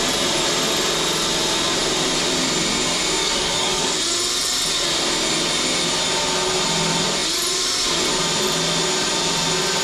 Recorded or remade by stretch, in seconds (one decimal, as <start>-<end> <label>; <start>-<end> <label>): 0.0-3.2 recorded; 3.2-4.0 remade; 4.0-9.8 recorded